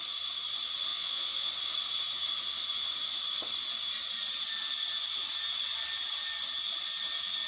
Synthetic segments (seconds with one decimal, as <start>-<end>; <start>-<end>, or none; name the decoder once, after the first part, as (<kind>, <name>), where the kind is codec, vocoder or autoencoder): 0.9-1.5 (vocoder, Vocos)